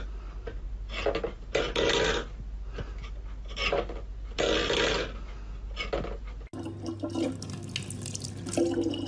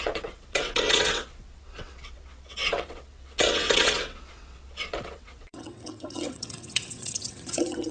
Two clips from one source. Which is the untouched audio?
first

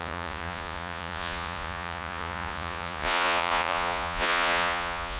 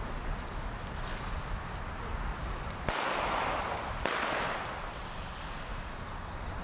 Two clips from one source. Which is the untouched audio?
second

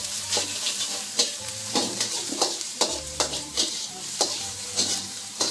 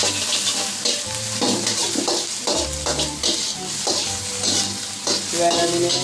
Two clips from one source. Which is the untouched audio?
second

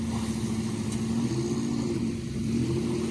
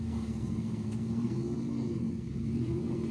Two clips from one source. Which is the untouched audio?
first